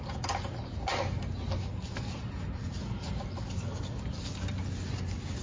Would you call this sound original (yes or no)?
yes